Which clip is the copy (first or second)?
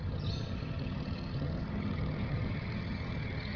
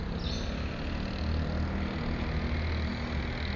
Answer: first